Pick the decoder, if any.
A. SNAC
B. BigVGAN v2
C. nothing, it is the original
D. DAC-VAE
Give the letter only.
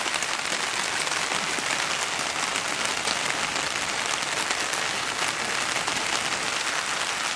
C